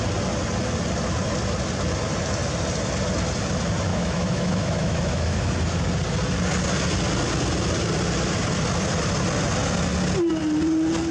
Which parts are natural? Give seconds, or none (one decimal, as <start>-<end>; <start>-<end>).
0.0-3.9; 5.5-11.1